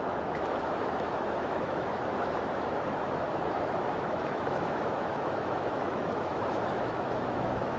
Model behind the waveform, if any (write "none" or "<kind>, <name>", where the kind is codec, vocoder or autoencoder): autoencoder, DAC-VAE